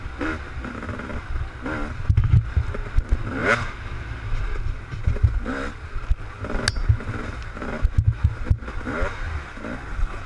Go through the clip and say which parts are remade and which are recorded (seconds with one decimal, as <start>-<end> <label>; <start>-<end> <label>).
0.0-10.3 recorded